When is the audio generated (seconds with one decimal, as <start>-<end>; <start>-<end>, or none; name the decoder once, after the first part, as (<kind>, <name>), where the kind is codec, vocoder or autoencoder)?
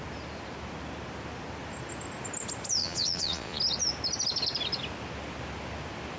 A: 2.8-3.6 (vocoder, Vocos)